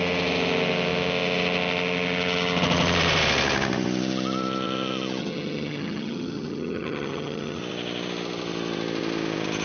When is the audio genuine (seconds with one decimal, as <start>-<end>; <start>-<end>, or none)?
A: 0.0-5.2; 7.6-9.6